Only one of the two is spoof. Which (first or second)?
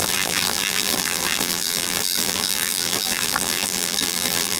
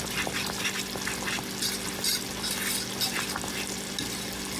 first